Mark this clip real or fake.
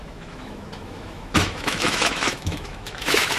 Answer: fake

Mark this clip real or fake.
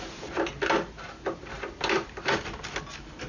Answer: real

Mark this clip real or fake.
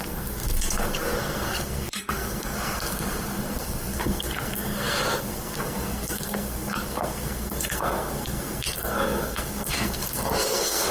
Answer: fake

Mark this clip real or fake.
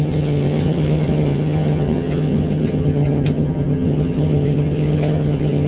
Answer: fake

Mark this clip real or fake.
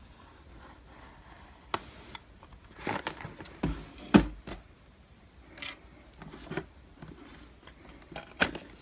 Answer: real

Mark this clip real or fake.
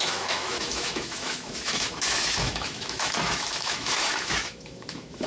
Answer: fake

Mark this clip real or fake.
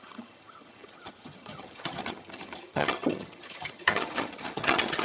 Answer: fake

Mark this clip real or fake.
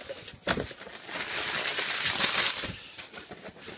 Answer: real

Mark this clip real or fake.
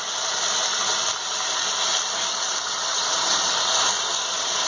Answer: real